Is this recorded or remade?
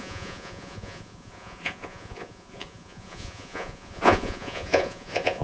remade